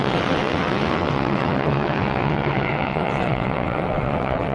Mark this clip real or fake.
fake